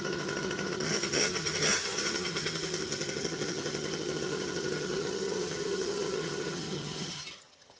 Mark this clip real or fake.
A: fake